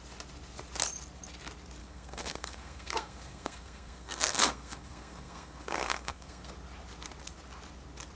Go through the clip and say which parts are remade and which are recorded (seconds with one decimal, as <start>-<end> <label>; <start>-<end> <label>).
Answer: 0.0-1.8 recorded; 1.8-6.5 remade; 6.5-8.2 recorded